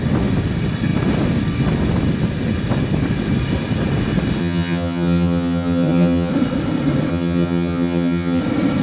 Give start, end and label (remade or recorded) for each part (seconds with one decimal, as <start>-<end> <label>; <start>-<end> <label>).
0.0-4.4 recorded; 4.4-6.3 remade; 6.3-7.1 recorded; 7.1-8.4 remade; 8.4-8.8 recorded